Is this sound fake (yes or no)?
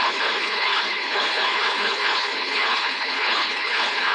yes